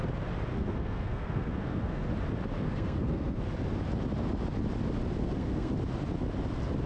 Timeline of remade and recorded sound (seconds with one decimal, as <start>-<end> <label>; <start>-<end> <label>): 0.0-0.5 recorded; 0.5-2.1 remade; 2.1-2.6 recorded; 2.6-3.4 remade; 3.4-5.2 recorded; 5.2-5.7 remade; 5.7-6.9 recorded